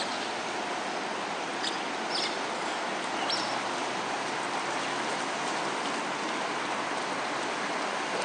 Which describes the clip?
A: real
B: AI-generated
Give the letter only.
A